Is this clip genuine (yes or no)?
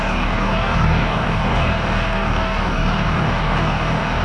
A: no